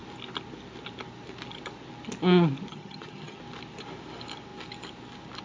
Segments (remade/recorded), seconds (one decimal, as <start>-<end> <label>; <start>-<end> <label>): 0.0-2.7 recorded; 2.7-3.4 remade; 3.4-5.4 recorded